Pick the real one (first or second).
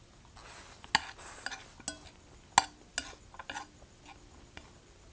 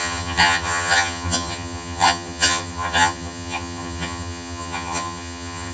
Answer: first